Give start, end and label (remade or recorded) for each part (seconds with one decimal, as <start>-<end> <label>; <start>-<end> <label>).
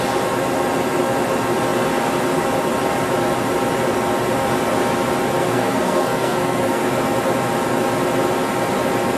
0.0-5.4 recorded; 5.4-6.9 remade; 6.9-9.2 recorded